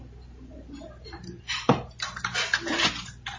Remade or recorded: recorded